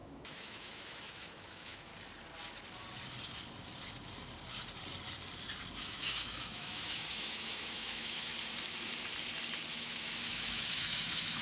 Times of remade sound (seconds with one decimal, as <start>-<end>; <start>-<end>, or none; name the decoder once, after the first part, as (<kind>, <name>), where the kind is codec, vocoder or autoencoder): 0.0-1.9 (autoencoder, DAC-VAE); 5.8-8.3; 9.7-11.4